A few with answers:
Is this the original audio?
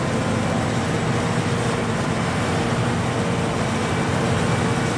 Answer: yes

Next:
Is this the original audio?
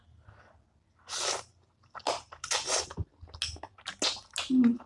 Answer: yes